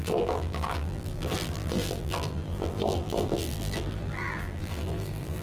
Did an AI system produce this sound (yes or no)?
yes